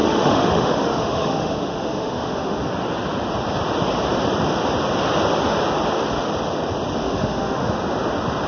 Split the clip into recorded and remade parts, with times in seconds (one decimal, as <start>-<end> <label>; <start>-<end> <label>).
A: 0.0-2.6 remade; 2.6-7.0 recorded; 7.0-7.7 remade; 7.7-8.5 recorded